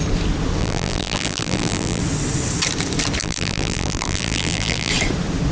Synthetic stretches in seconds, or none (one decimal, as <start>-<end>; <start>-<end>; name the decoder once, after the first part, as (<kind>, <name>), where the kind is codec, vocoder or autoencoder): 0.6-2.0 (vocoder, BigVGAN v2); 3.2-4.9